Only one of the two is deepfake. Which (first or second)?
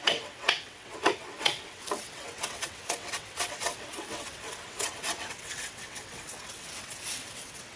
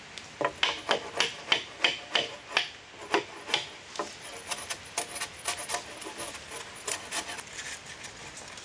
first